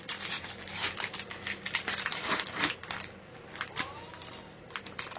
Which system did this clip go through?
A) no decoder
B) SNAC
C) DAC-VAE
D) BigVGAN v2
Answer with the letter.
A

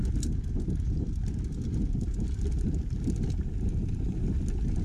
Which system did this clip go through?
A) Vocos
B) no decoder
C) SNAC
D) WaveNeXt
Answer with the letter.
B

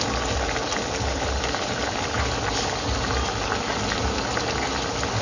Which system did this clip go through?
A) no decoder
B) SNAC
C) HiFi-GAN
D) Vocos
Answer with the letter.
A